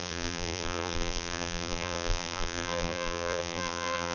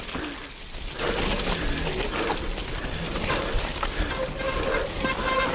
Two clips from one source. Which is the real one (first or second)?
second